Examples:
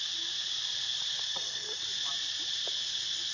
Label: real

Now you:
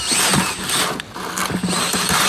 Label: real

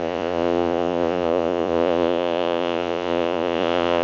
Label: fake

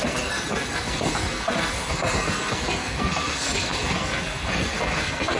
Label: fake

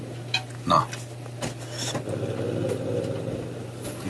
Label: real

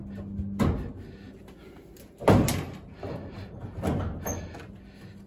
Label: real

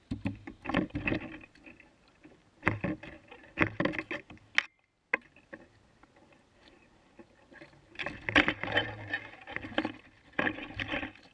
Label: real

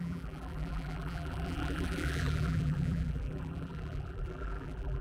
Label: fake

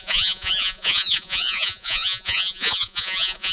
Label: fake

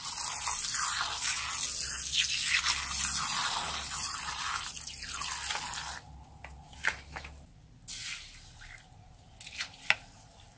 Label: real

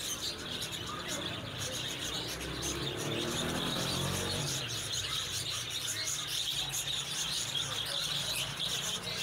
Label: fake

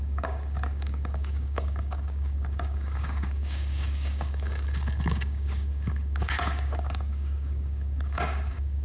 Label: fake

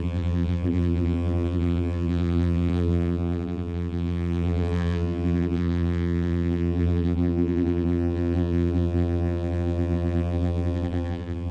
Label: fake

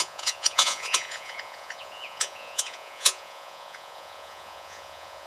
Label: fake